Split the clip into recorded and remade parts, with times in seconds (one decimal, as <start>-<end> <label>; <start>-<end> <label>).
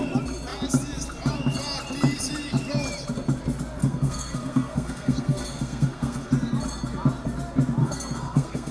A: 0.0-3.8 recorded; 3.8-6.3 remade; 6.3-7.8 recorded; 7.8-8.7 remade